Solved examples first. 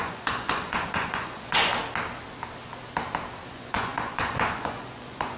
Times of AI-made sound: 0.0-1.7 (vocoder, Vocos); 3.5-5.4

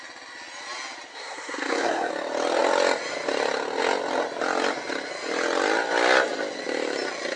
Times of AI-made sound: 1.1-2.1 (codec, SNAC)

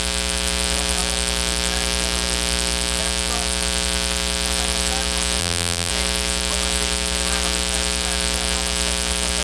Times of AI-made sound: 5.4-5.9 (vocoder, BigVGAN v2)

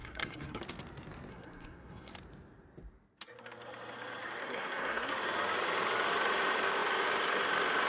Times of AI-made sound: 0.0-0.6 (codec, SNAC); 1.3-2.1; 4.4-5.1

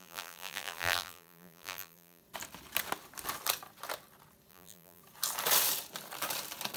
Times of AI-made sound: 0.0-2.2 (vocoder, BigVGAN v2); 4.5-5.0

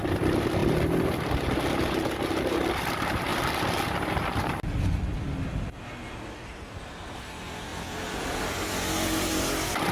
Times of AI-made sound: 0.0-0.6 (vocoder, BigVGAN v2); 1.7-3.3; 6.1-9.9